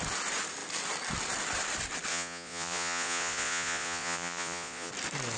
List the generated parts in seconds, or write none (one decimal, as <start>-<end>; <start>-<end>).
2.1-4.9